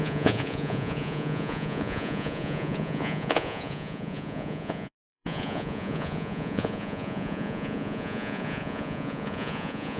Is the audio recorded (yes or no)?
no